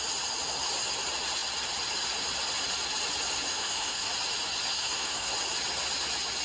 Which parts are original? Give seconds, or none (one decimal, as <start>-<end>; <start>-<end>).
0.0-3.5; 4.1-4.7; 5.3-6.4